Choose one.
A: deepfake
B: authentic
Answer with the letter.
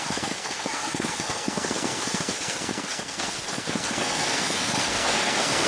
A